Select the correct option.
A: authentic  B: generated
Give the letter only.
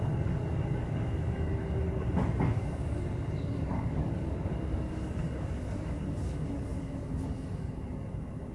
B